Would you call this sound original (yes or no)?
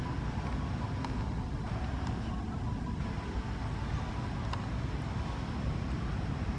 yes